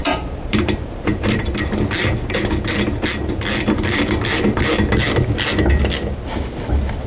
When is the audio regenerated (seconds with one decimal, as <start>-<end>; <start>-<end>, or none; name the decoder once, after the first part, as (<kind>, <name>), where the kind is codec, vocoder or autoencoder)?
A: 0.0-1.4 (vocoder, BigVGAN v2)